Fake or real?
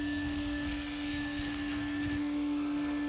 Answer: fake